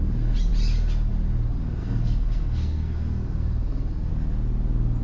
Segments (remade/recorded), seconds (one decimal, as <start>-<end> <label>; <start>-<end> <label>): 0.0-1.8 recorded; 1.8-4.1 remade; 4.1-5.0 recorded